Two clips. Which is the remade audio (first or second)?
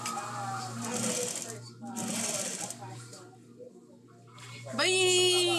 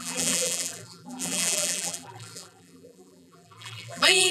second